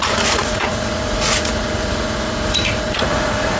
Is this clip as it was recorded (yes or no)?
no